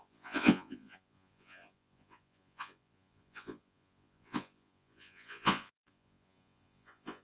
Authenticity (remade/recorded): remade